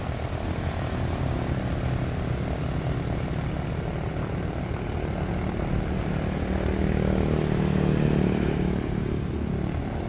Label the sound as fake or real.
real